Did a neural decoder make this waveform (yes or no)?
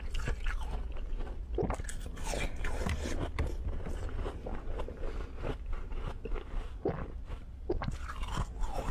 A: no